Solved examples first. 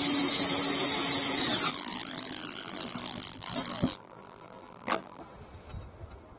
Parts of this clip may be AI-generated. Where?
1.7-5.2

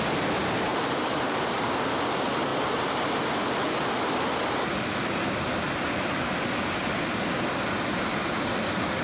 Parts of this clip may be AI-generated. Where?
0.7-1.8; 2.5-3.0

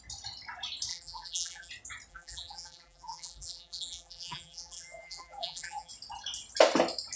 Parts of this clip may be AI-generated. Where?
0.9-1.7; 2.1-5.9

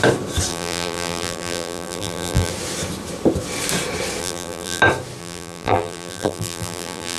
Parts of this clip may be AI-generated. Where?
0.5-2.5; 4.2-4.8; 5.2-7.2